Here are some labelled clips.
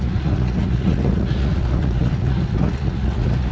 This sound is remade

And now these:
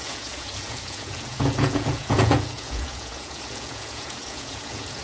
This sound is remade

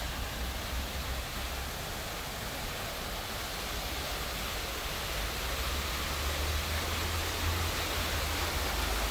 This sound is recorded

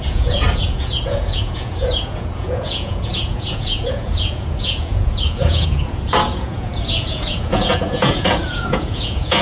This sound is remade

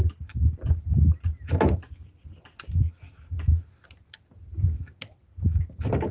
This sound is recorded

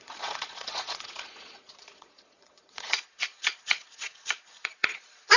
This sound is remade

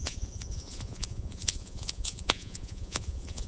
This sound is remade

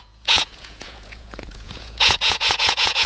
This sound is remade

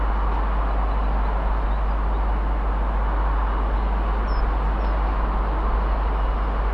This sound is recorded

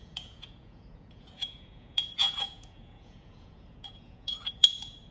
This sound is remade